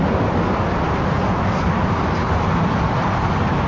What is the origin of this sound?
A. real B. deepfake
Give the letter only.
A